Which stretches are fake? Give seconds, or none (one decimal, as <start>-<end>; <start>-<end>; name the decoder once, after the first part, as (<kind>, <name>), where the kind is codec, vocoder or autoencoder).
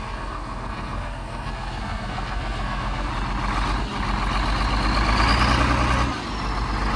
0.0-3.1 (codec, SNAC)